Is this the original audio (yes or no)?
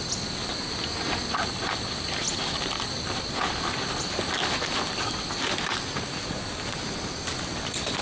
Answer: yes